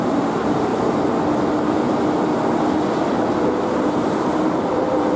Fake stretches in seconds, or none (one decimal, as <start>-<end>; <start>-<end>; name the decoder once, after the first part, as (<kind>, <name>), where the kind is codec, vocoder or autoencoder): 0.0-0.7 (vocoder, BigVGAN v2); 3.5-5.2